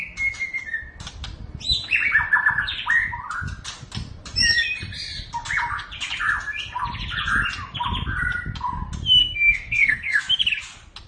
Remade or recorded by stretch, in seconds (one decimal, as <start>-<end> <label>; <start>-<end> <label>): 0.0-9.2 recorded; 9.2-10.2 remade; 10.2-11.1 recorded